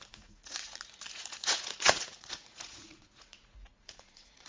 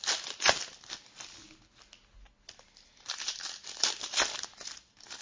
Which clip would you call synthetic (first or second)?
first